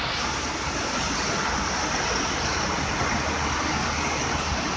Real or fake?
real